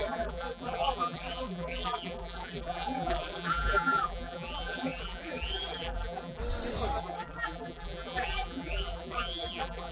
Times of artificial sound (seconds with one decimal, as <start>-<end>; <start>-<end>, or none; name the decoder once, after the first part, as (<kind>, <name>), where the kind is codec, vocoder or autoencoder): 0.0-6.4 (vocoder, BigVGAN v2); 7.0-9.9

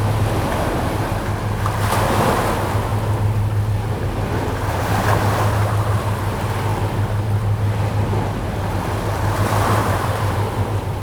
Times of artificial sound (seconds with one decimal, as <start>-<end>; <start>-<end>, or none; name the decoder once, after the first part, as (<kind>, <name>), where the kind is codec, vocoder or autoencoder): 9.8-10.3 (vocoder, BigVGAN v2)